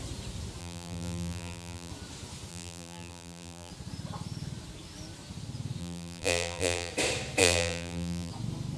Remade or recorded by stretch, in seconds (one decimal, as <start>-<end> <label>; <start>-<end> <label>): 0.0-0.6 recorded; 0.6-1.9 remade; 1.9-2.5 recorded; 2.5-3.7 remade; 3.7-5.8 recorded; 5.8-6.9 remade; 6.9-7.4 recorded; 7.4-8.3 remade; 8.3-8.8 recorded